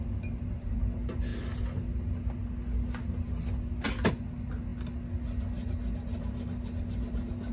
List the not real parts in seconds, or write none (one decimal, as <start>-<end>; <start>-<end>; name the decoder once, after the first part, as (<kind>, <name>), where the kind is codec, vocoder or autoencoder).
none